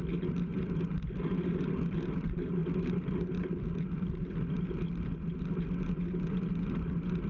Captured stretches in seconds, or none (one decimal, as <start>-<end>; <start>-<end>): 0.0-7.3